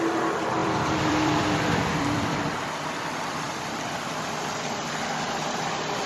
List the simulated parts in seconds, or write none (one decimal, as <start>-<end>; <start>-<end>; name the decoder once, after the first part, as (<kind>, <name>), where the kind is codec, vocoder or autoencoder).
0.6-4.2 (vocoder, BigVGAN v2)